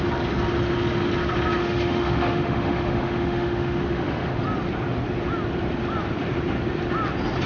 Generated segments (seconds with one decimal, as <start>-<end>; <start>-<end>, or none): 1.6-4.4